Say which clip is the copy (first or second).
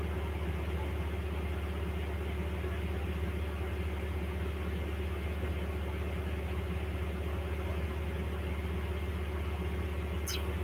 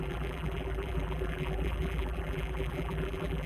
second